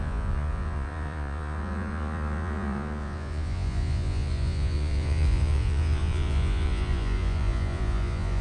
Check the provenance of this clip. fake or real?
fake